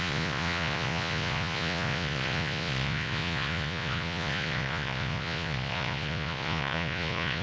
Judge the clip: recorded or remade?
remade